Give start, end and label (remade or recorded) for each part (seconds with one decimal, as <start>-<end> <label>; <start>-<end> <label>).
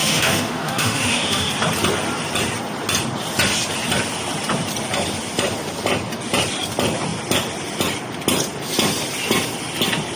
0.0-1.5 remade; 1.5-10.2 recorded